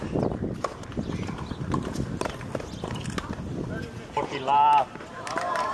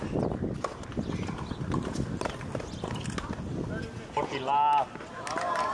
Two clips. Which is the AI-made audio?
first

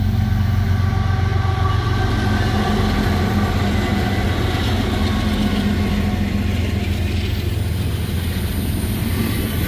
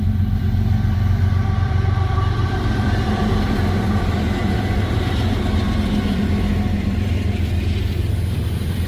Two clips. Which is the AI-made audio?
second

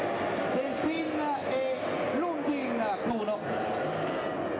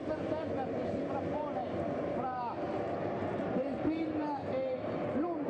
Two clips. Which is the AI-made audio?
second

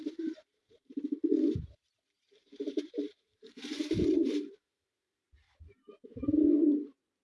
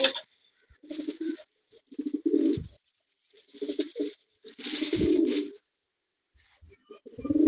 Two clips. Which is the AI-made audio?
first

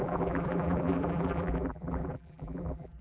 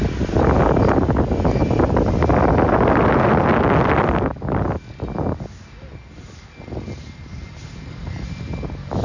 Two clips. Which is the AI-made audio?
first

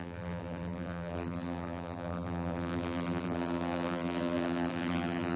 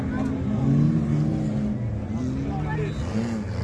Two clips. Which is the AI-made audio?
first